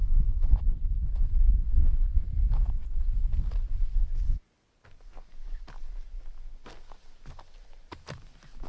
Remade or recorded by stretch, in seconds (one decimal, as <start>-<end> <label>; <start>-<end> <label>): 0.0-0.6 remade; 0.6-8.7 recorded

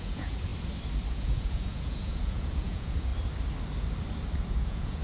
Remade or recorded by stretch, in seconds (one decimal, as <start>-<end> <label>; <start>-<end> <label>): 0.0-0.5 remade; 0.5-1.1 recorded; 1.1-3.1 remade; 3.1-4.5 recorded; 4.5-5.0 remade

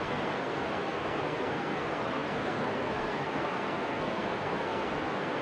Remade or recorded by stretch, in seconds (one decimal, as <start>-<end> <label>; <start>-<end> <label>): 0.0-5.4 remade